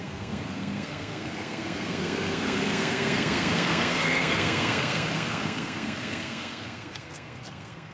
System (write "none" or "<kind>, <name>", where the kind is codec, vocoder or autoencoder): codec, SNAC